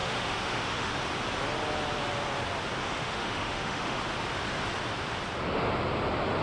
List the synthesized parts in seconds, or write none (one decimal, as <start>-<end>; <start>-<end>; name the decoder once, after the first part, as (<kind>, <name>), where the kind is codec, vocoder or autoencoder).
0.0-0.9 (autoencoder, DAC-VAE); 2.8-4.0